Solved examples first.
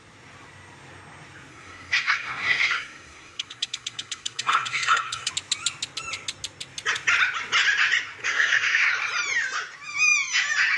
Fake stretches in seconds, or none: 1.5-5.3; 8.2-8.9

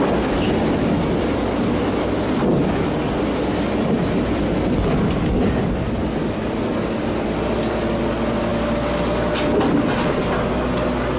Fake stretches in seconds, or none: none